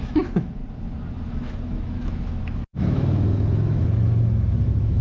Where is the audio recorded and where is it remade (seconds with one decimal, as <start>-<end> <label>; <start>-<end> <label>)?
0.0-0.6 remade; 0.6-1.3 recorded; 1.3-5.0 remade